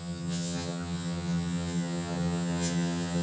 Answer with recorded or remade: remade